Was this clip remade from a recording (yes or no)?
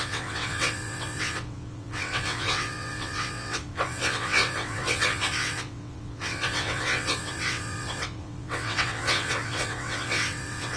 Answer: yes